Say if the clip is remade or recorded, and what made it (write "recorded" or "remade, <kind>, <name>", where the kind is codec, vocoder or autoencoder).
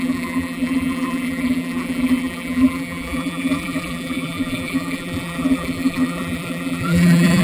remade, vocoder, BigVGAN v2